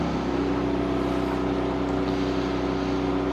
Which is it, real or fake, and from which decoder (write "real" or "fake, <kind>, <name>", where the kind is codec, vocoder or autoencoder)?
real